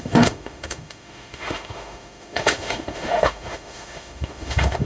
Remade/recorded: remade